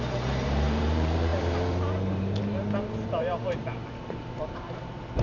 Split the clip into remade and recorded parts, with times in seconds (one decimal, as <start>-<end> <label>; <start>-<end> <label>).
0.0-5.2 remade